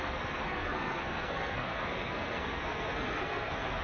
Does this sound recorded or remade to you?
remade